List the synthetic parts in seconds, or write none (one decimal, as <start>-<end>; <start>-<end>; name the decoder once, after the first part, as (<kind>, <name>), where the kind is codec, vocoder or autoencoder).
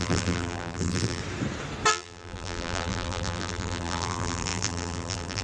0.0-1.2 (vocoder, BigVGAN v2); 1.9-5.4